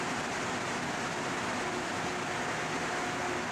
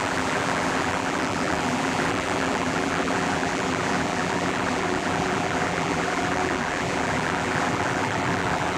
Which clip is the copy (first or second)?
second